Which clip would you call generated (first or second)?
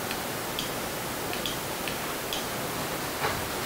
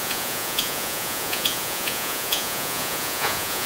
second